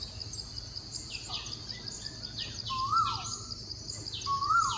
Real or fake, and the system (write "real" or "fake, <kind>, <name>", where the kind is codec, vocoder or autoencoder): real